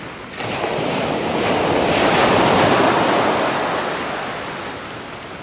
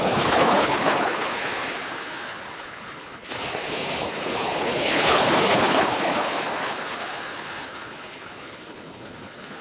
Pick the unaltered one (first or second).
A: first